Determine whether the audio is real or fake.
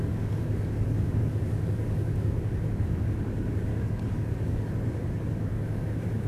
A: fake